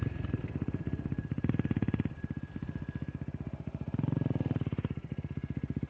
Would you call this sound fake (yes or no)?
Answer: no